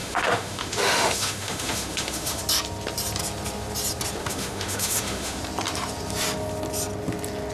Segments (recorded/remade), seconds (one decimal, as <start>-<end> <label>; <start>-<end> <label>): 0.0-2.4 remade; 2.4-4.2 recorded; 4.2-5.4 remade; 5.4-7.5 recorded